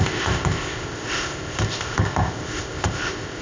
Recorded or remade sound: remade